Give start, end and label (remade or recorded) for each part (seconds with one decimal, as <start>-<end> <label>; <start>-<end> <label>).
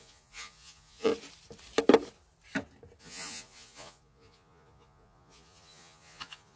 0.0-1.1 remade; 1.1-3.0 recorded; 3.0-6.6 remade